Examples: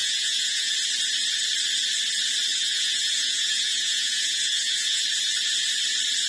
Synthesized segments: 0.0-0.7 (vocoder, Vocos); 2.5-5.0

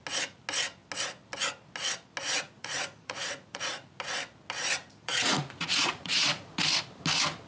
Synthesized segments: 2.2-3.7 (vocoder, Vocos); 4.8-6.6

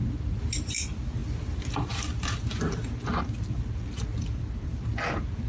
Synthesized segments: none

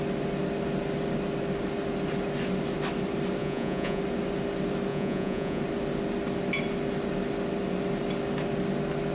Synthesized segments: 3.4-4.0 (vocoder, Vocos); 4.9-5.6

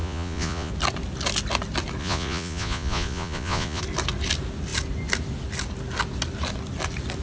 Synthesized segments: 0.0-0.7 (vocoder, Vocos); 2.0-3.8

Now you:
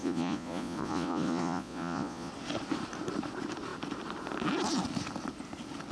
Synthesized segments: 0.0-2.3 (vocoder, Vocos)

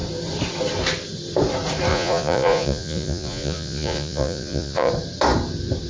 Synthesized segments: 1.9-4.9 (vocoder, Vocos)